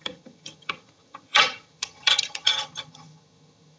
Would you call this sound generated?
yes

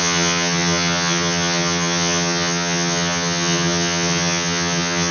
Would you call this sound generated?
yes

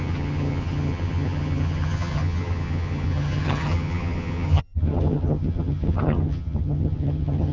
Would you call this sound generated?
yes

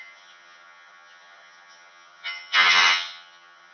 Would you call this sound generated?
yes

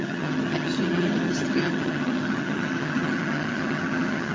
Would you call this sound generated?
yes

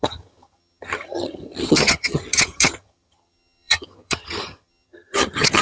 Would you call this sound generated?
yes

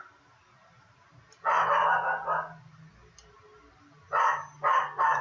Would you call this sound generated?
no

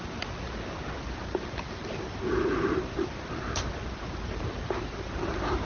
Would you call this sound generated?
no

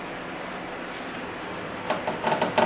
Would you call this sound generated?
no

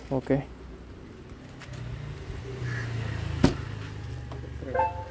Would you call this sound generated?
no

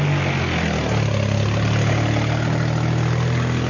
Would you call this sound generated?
no